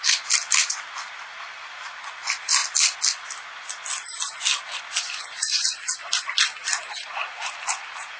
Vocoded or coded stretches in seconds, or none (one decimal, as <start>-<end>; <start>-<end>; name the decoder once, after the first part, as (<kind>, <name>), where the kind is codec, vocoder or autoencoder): none